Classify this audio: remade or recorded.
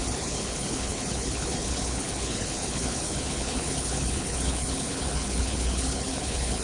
remade